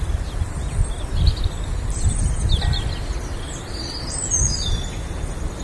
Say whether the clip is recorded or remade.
recorded